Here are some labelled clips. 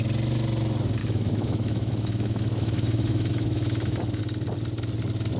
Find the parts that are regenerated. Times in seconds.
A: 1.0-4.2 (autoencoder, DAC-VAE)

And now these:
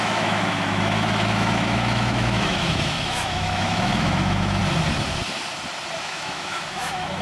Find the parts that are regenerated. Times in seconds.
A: 0.0-4.6 (autoencoder, DAC-VAE); 6.0-7.2

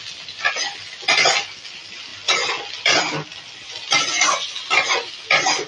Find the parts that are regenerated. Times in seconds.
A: none

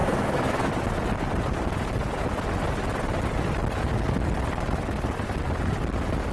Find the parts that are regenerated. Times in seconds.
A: 0.0-0.7 (autoencoder, DAC-VAE)